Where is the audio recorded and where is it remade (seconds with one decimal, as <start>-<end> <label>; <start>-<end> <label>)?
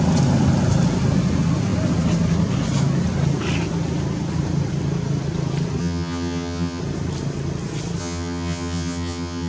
0.0-5.8 recorded; 5.8-6.8 remade; 6.8-8.0 recorded; 8.0-9.5 remade